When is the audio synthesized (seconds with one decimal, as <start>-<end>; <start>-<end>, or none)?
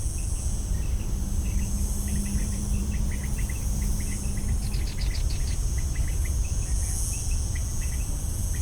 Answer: 0.7-1.6; 2.4-3.0